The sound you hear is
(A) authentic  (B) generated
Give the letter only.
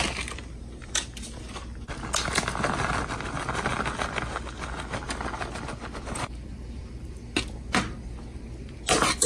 A